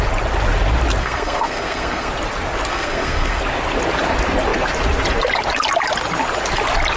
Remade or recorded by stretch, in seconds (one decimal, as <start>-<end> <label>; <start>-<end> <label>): 0.0-1.0 recorded; 1.0-2.1 remade; 2.1-2.7 recorded; 2.7-3.4 remade; 3.4-7.0 recorded